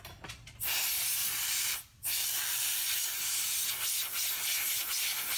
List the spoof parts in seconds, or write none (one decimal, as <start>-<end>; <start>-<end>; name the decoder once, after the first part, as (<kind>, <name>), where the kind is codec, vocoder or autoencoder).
1.2-3.2 (vocoder, BigVGAN v2)